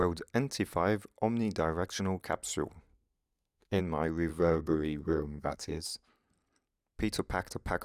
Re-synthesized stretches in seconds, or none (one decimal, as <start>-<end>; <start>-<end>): 2.9-3.8; 4.3-6.1